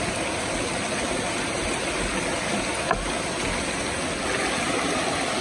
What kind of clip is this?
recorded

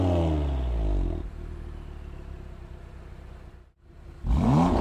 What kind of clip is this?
recorded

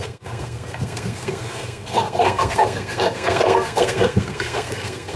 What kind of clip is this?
remade